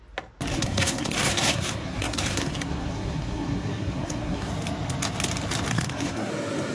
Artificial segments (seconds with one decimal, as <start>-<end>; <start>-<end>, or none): 0.5-4.5; 5.7-6.3